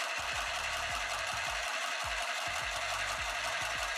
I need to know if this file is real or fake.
real